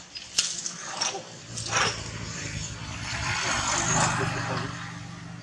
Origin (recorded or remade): recorded